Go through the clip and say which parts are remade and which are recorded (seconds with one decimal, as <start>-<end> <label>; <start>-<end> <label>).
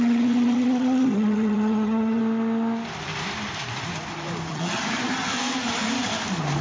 0.0-2.2 remade; 2.2-4.5 recorded; 4.5-5.3 remade; 5.3-6.6 recorded